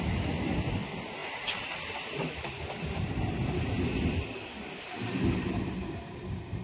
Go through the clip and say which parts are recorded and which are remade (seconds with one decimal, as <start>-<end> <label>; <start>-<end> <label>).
0.0-6.6 recorded